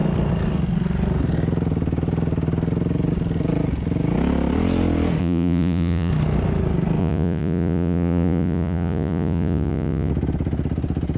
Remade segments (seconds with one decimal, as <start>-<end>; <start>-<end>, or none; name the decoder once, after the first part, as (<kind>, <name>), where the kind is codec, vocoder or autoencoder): 5.2-6.1 (vocoder, Vocos); 7.0-10.1